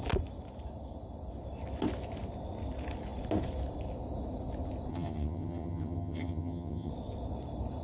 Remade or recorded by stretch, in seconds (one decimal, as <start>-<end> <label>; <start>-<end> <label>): 0.0-4.9 recorded; 4.9-6.9 remade; 6.9-7.8 recorded